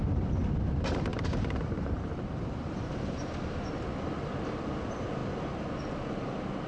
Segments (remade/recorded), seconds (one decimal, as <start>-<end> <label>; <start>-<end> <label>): 0.0-1.1 recorded; 1.1-3.3 remade; 3.3-6.7 recorded